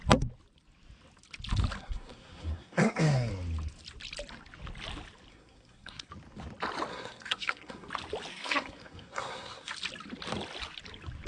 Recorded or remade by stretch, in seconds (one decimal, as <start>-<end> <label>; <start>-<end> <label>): 0.0-1.8 recorded; 1.8-3.3 remade; 3.3-5.3 recorded; 5.3-6.1 remade; 6.1-6.9 recorded; 6.9-7.9 remade; 7.9-8.3 recorded; 8.3-9.7 remade; 9.7-11.3 recorded